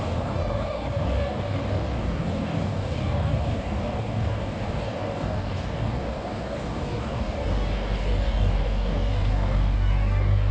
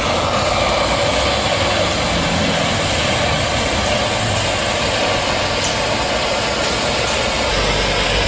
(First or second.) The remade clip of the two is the first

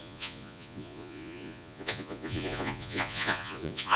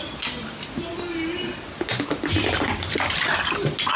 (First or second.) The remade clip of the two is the first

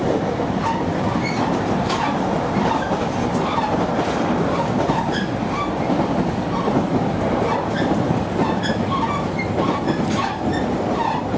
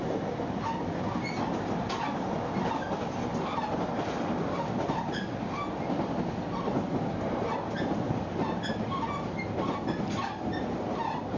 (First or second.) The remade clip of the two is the first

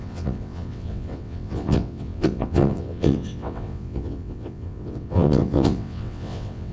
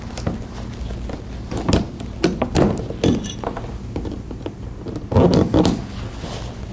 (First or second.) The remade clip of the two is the first